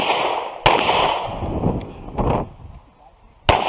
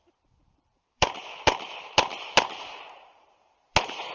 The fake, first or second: second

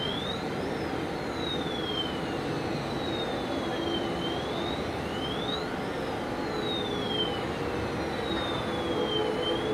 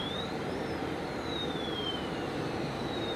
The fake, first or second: second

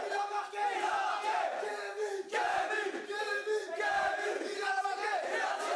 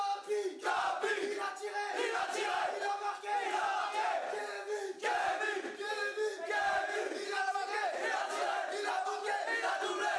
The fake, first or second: first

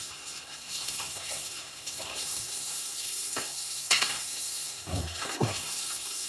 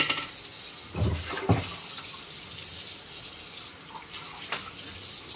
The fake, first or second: first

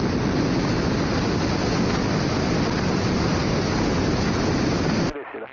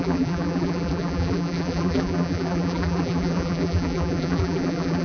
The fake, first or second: second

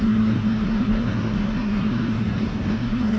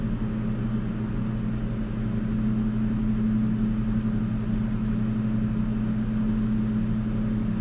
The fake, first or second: first